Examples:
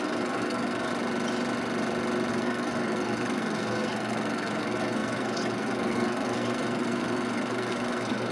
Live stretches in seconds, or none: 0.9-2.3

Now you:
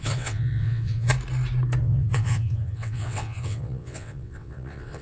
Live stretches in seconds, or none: 1.1-1.8

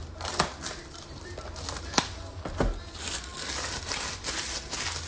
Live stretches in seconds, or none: 0.0-5.1

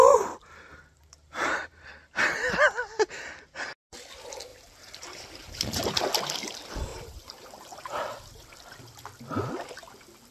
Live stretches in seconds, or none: 0.0-0.7; 1.9-4.5; 6.1-6.9; 7.8-10.3

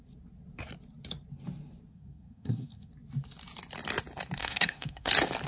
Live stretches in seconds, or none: 0.0-1.9; 2.9-4.4; 5.1-5.5